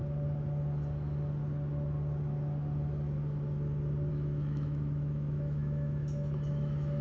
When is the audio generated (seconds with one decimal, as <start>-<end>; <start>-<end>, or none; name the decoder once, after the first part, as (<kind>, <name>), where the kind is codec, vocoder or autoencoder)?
4.1-7.0 (autoencoder, DAC-VAE)